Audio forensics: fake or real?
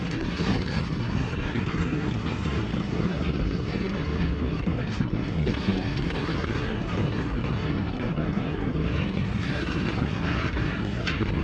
fake